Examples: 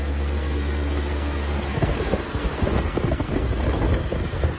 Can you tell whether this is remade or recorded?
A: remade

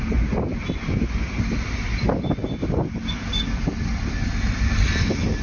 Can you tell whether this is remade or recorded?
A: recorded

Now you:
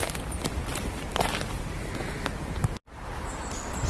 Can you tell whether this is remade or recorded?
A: recorded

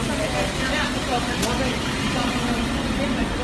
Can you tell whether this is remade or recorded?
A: recorded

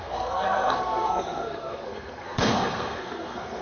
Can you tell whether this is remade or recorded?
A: remade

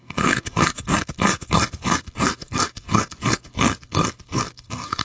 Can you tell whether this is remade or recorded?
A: remade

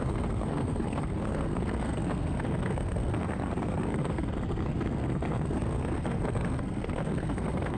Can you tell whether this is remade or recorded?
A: remade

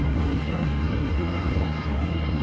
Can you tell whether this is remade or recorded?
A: remade